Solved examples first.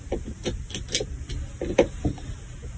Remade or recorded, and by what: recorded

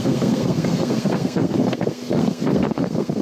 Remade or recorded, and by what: remade, codec, SNAC